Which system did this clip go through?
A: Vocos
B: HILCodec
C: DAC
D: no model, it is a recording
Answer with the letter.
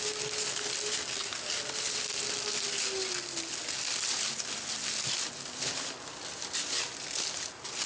D